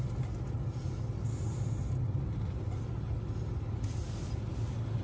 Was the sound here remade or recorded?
recorded